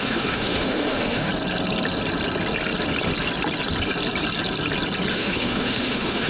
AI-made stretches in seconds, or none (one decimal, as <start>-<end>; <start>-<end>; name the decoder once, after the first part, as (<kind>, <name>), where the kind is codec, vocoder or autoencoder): 0.0-1.3 (autoencoder, DAC-VAE); 5.1-6.3